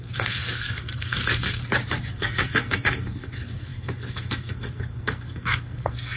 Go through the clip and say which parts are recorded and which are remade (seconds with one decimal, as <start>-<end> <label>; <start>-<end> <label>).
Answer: 0.0-1.6 remade; 1.6-2.1 recorded; 2.1-6.2 remade